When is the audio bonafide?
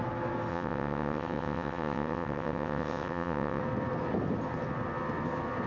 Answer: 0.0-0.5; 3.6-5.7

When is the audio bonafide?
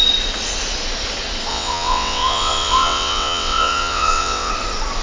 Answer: 0.0-1.5; 4.5-5.0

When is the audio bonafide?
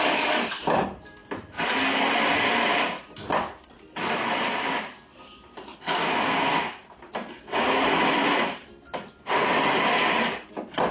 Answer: 0.0-10.9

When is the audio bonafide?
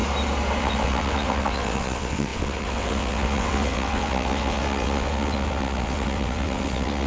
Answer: 0.0-0.6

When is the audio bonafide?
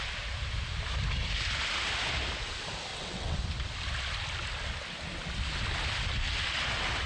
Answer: 0.0-2.9; 3.4-7.1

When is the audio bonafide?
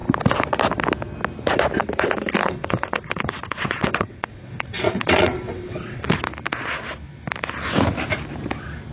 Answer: 0.0-2.4; 6.0-8.9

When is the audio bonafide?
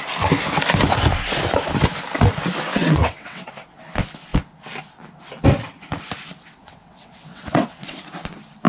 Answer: 0.0-2.7; 3.5-6.6; 8.0-8.7